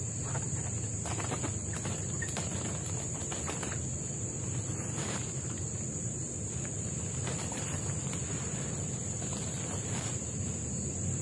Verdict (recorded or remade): remade